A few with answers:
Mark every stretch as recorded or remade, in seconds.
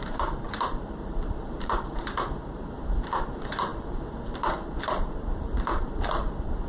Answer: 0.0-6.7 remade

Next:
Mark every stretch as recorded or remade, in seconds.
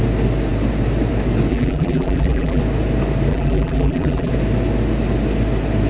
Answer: 0.0-1.5 recorded; 1.5-2.6 remade; 2.6-3.3 recorded; 3.3-4.3 remade; 4.3-5.9 recorded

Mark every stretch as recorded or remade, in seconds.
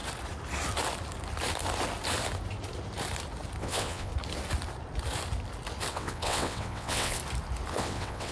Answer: 0.0-3.6 recorded; 3.6-4.1 remade; 4.1-5.9 recorded; 5.9-7.2 remade; 7.2-7.7 recorded; 7.7-8.3 remade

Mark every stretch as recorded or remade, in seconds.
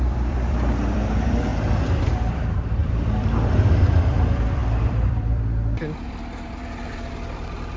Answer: 0.0-7.8 remade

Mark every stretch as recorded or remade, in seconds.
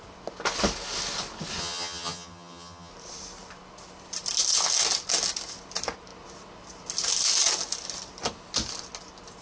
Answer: 0.0-1.6 recorded; 1.6-2.9 remade; 2.9-9.4 recorded